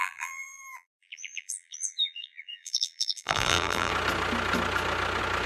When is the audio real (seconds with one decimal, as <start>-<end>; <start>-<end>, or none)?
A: 3.9-5.5